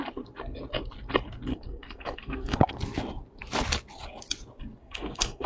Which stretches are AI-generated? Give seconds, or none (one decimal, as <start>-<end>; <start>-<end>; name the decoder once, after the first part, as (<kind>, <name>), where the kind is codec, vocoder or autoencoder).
1.5-2.7 (codec, SNAC); 4.8-5.5